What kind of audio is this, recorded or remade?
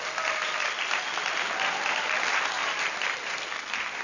remade